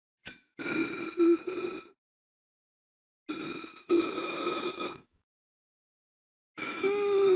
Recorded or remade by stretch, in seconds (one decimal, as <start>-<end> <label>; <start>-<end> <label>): 0.0-0.8 remade; 0.8-3.8 recorded; 3.8-7.4 remade